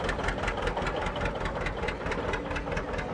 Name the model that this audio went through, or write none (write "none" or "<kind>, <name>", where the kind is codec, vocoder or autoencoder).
none